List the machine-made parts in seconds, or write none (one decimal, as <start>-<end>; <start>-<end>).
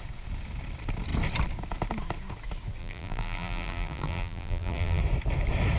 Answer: 2.8-5.0